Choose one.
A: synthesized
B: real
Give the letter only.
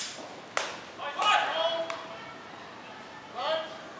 B